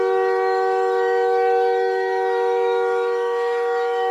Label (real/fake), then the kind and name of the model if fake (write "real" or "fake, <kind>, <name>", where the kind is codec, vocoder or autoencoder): fake, autoencoder, DAC-VAE